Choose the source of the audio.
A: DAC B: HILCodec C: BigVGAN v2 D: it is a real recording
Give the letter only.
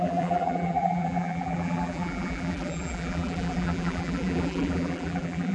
C